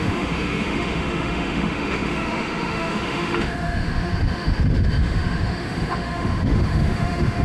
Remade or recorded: remade